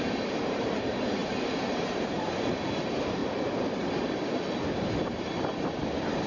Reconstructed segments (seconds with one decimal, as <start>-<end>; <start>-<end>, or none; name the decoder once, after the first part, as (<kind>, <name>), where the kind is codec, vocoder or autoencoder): 0.0-3.2 (vocoder, BigVGAN v2); 4.7-6.3